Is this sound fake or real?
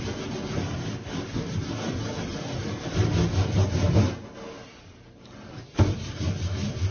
real